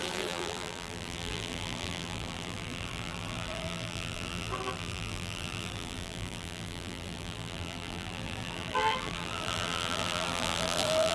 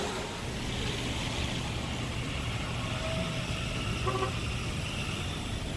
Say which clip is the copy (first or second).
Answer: first